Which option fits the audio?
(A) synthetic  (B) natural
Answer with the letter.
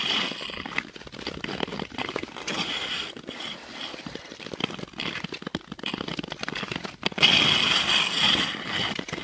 B